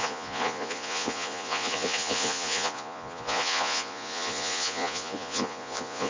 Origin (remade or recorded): remade